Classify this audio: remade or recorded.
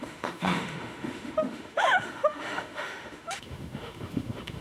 remade